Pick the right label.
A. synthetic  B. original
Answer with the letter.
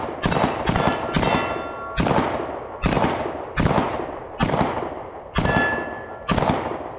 B